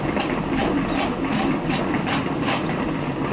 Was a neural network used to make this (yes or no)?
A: no